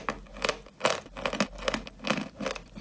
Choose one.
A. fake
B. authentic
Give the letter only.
B